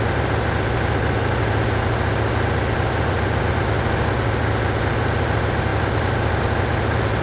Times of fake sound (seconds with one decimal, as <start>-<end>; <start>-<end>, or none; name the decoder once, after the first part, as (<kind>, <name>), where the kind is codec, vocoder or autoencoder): none